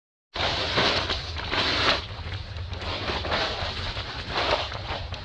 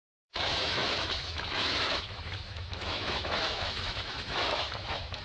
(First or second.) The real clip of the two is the first